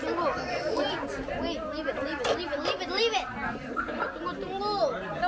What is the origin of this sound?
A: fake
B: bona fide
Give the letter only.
B